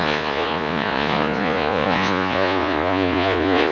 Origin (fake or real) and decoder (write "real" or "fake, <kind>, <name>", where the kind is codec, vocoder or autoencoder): fake, vocoder, Vocos